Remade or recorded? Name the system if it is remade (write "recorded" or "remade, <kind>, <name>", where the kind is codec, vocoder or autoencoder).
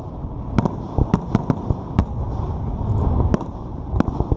recorded